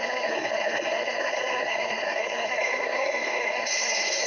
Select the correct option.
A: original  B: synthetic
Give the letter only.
B